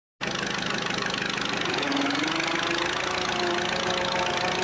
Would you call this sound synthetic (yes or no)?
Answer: no